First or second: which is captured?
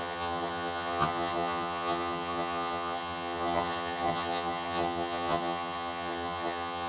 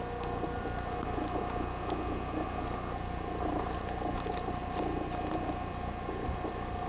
second